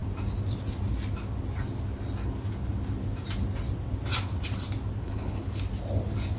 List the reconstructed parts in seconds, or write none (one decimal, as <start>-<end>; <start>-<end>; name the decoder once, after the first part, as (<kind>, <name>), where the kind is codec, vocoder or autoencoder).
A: 5.0-5.6 (codec, HILCodec)